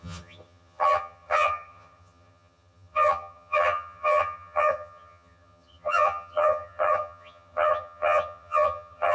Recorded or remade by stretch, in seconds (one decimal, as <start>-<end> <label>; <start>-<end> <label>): 0.0-9.1 remade